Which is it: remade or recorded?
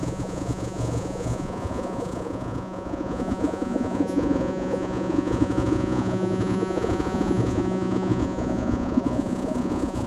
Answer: remade